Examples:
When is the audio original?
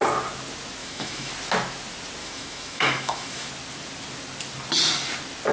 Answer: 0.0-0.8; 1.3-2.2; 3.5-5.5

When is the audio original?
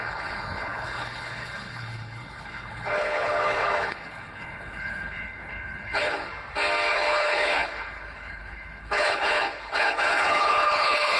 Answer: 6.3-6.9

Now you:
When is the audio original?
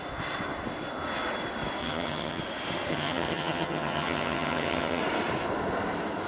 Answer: 0.0-1.8; 2.4-2.9; 5.0-6.3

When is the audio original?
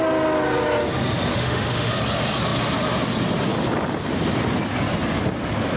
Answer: 0.0-1.3; 1.9-5.8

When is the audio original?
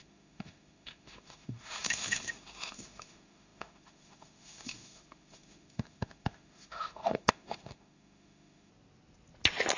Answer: 8.7-9.8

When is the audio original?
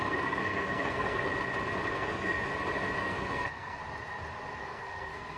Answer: 1.3-1.9; 2.5-3.0; 3.8-4.6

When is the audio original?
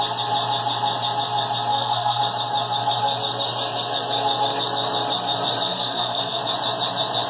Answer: 0.0-1.7; 2.2-5.7; 6.4-7.3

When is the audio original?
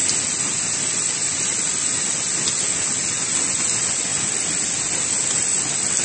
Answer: 0.0-6.0